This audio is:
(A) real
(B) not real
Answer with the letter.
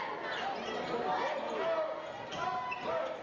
A